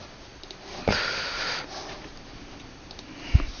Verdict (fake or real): real